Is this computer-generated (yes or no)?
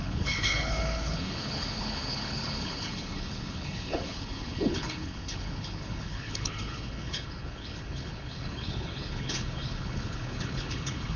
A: yes